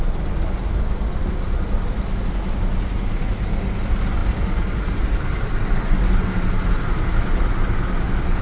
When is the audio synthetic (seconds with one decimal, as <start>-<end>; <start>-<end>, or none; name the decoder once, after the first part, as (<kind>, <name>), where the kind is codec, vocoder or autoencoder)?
none